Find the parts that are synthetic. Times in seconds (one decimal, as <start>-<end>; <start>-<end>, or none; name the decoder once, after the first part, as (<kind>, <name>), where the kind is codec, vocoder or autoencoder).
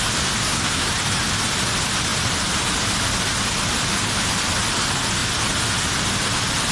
0.4-0.9 (codec, SNAC)